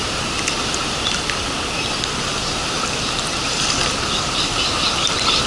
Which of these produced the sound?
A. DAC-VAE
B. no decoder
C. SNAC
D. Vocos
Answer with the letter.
B